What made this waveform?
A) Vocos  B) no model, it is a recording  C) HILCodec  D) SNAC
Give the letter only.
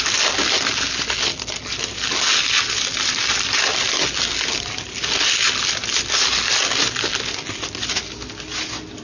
B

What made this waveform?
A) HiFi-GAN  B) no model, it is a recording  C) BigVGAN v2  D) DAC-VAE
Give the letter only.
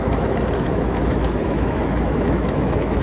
D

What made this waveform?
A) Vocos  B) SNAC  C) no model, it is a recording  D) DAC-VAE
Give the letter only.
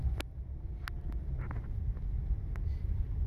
C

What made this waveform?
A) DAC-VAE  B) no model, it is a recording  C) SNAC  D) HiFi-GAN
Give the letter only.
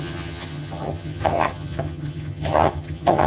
D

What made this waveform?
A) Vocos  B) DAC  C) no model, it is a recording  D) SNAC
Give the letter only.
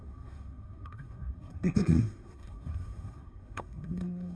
D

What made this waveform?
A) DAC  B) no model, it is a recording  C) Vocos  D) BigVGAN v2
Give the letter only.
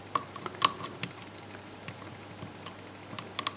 B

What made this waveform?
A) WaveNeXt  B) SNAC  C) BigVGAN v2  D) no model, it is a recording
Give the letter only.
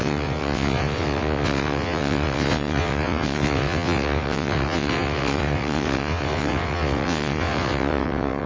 A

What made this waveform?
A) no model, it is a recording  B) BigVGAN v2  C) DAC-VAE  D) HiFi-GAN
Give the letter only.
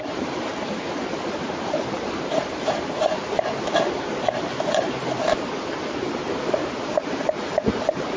B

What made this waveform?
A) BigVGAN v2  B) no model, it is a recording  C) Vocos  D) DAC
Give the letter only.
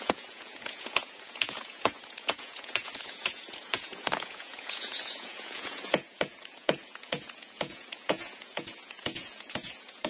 C